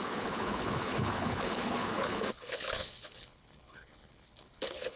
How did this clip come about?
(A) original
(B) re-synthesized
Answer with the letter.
B